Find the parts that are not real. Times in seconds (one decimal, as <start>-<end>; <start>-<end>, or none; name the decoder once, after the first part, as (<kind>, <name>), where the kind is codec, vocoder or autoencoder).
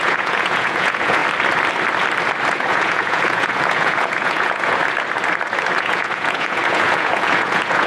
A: 0.0-1.2 (vocoder, Vocos); 2.5-4.8; 5.8-7.9